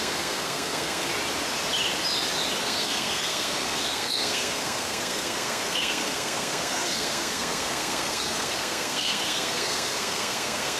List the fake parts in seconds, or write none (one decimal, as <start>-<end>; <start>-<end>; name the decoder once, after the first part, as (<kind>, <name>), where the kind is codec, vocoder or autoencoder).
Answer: 0.0-1.1 (codec, SNAC); 2.6-10.8